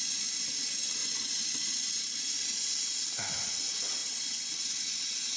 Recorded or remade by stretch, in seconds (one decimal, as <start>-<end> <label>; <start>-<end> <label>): 0.0-1.0 recorded; 1.0-1.6 remade; 1.6-4.0 recorded; 4.0-5.0 remade; 5.0-5.4 recorded